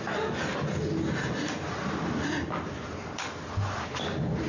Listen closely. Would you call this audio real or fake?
real